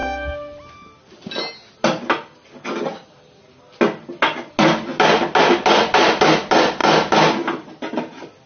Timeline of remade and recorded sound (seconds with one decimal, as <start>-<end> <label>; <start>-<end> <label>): 0.0-8.5 recorded